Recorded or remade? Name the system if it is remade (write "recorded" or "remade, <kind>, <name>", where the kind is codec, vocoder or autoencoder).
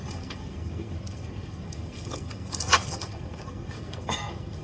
remade, codec, SNAC